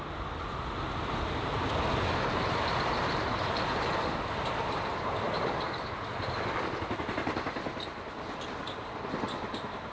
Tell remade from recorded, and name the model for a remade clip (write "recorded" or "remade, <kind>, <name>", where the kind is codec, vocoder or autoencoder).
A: recorded